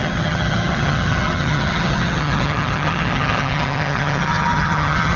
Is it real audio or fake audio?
fake